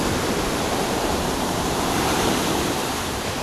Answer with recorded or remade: remade